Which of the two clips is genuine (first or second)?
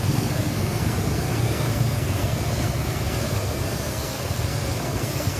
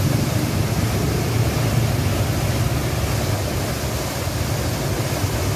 second